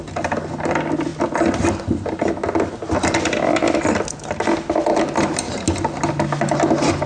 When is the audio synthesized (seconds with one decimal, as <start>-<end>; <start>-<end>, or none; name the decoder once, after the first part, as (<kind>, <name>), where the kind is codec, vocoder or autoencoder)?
none